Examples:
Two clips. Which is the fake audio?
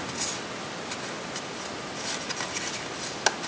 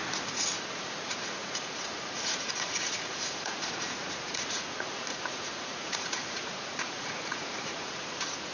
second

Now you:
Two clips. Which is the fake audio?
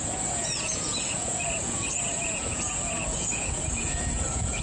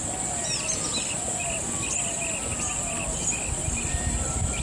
first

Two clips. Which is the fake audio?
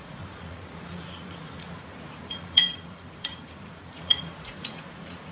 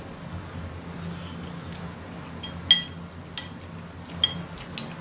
first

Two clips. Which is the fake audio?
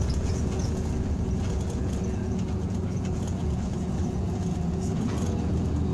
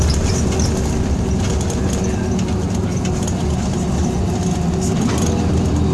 first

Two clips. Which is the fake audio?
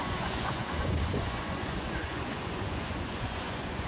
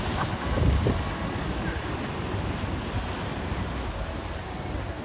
first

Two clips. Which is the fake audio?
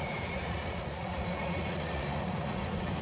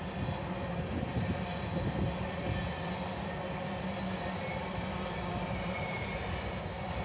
first